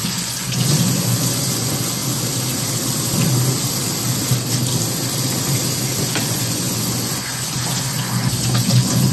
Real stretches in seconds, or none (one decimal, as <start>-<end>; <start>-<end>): 2.0-6.0